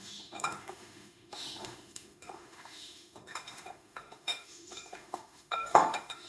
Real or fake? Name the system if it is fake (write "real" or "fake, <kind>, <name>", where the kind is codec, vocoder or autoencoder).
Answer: fake, autoencoder, DAC-VAE